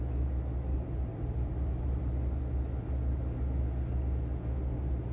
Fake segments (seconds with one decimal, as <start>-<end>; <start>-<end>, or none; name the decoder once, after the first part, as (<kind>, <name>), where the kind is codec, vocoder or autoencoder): 1.1-2.0 (vocoder, BigVGAN v2)